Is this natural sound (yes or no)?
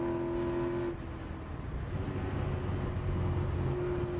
yes